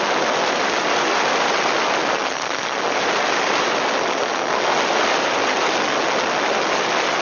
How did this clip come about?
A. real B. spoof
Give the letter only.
A